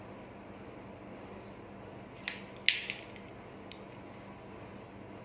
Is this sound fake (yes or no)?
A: no